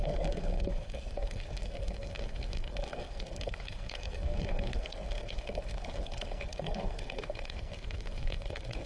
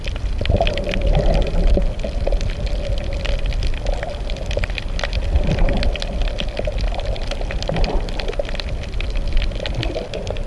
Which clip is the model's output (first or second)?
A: first